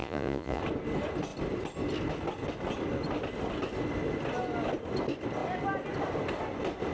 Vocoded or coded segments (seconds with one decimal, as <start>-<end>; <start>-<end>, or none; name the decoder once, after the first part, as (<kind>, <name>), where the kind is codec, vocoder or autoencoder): 0.0-0.6 (vocoder, Vocos)